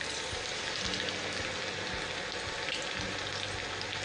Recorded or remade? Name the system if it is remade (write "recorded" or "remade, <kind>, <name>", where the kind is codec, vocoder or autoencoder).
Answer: recorded